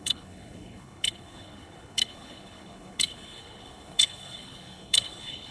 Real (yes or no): no